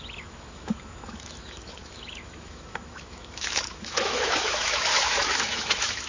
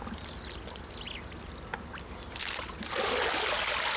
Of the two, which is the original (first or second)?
second